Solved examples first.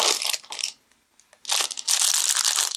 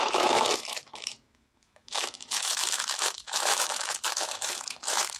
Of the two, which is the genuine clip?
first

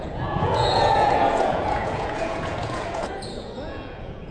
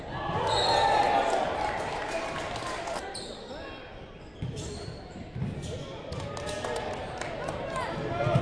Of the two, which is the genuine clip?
second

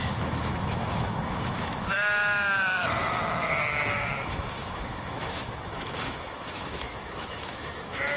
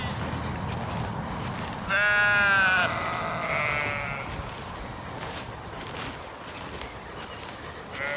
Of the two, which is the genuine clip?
second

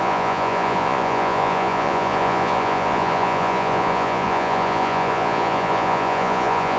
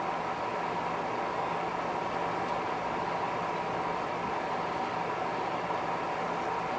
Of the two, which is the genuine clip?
second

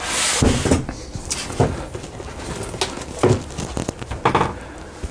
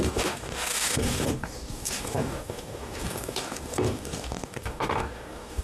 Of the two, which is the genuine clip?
first